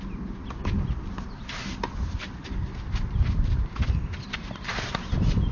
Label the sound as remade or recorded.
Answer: remade